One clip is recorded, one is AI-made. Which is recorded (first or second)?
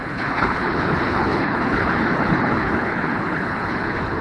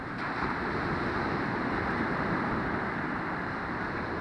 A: second